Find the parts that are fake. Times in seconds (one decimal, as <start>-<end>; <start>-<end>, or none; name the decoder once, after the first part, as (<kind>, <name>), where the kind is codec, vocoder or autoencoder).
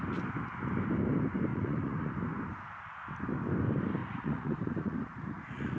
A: 1.5-2.1 (vocoder, Vocos); 4.0-5.8